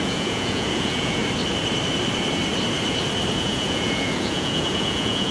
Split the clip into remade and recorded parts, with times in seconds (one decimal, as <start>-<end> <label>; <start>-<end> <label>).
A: 0.0-1.2 remade; 1.2-3.3 recorded; 3.3-5.3 remade